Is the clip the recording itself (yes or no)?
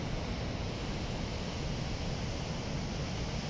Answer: yes